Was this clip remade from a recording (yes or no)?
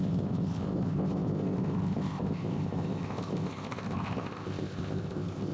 yes